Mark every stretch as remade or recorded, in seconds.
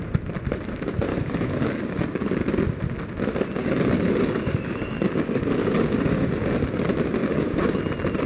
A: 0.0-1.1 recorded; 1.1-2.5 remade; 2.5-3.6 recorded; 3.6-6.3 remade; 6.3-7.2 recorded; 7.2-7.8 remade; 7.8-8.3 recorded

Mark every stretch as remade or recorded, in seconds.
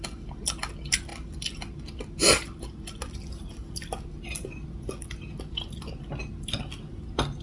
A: 0.0-7.4 recorded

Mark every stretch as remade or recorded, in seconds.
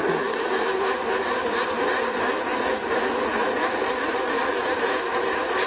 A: 0.0-0.7 recorded; 0.7-2.4 remade; 2.4-3.3 recorded; 3.3-5.7 remade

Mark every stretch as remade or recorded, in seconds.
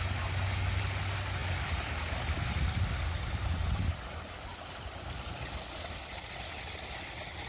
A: 0.0-7.5 recorded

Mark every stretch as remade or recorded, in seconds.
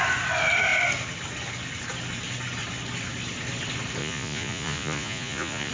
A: 0.0-4.0 recorded; 4.0-5.7 remade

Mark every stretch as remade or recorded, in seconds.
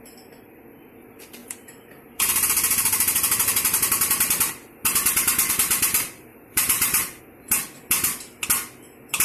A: 0.0-6.3 recorded; 6.3-7.2 remade; 7.2-9.2 recorded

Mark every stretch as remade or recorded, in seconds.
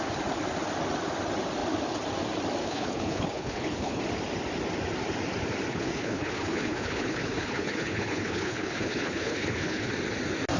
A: 0.0-2.6 recorded; 2.6-4.0 remade; 4.0-5.7 recorded; 5.7-9.9 remade; 9.9-10.6 recorded